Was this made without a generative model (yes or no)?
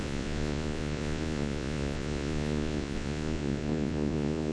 no